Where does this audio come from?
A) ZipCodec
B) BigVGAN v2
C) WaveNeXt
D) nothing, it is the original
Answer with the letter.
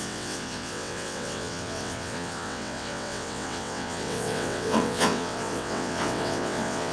C